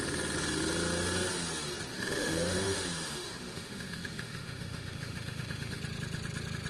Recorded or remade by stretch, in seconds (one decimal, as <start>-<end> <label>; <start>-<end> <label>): 0.0-1.9 recorded; 1.9-5.8 remade; 5.8-6.7 recorded